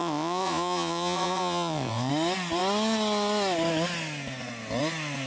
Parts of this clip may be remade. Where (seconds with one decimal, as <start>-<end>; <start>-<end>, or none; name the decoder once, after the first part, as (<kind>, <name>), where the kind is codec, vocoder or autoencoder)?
0.0-2.1 (vocoder, Vocos)